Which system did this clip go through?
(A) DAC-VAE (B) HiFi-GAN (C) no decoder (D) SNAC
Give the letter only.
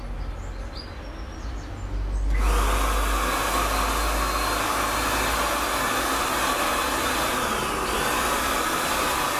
C